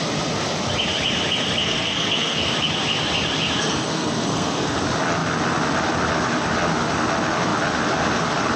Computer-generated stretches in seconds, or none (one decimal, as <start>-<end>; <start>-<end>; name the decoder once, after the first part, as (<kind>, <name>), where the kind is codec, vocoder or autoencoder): 1.6-2.5 (codec, SNAC); 3.6-4.8